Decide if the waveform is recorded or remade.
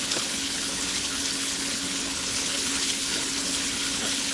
remade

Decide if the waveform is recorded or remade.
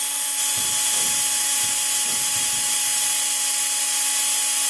recorded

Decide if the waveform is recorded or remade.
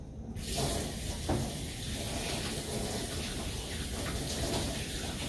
recorded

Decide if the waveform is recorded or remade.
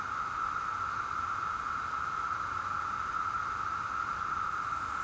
recorded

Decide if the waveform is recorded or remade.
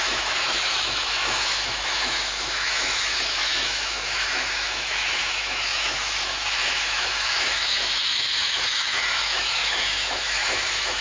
remade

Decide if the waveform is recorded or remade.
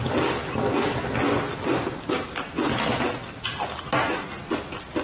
recorded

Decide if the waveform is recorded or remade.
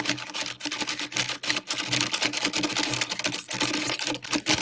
recorded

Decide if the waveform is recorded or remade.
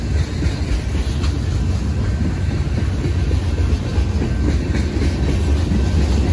recorded